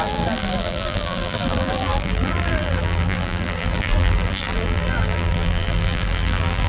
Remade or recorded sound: remade